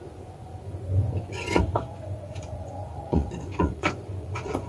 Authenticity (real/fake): fake